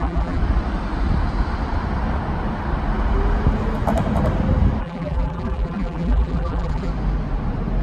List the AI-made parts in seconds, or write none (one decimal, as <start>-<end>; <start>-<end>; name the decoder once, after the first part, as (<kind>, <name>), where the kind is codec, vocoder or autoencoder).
0.0-0.4 (vocoder, BigVGAN v2); 4.8-6.9